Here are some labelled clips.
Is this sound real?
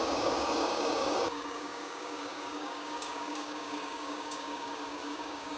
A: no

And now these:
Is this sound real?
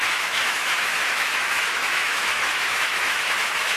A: no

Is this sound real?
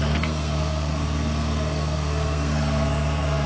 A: no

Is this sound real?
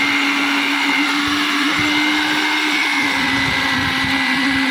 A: yes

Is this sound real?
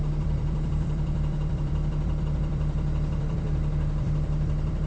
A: no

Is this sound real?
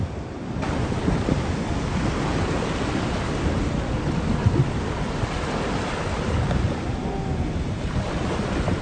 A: yes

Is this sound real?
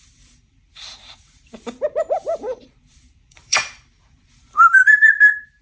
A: no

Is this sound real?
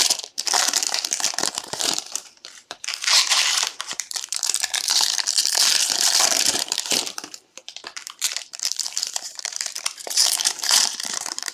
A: no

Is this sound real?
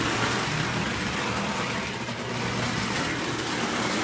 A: yes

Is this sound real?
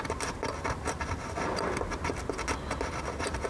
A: yes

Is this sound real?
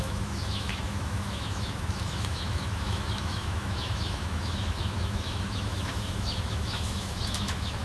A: no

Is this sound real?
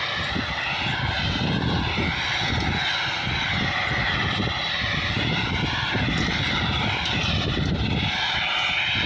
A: yes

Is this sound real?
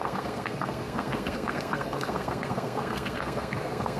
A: no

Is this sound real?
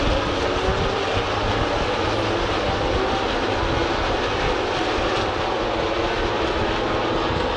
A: yes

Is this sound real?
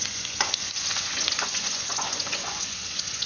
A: no